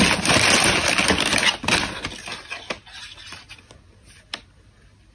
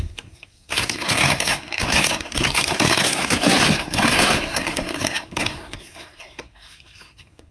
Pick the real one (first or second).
first